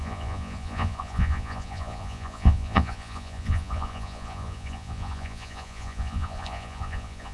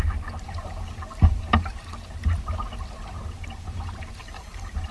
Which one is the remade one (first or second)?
first